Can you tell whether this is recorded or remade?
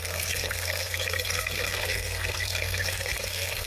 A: remade